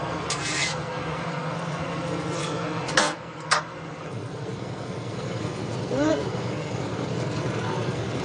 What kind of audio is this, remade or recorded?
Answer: remade